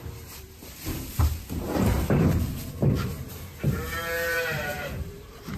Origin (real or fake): fake